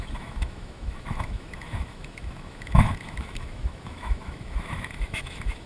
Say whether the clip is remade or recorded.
remade